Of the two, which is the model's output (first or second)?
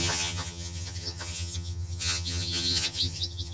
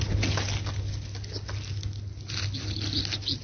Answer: first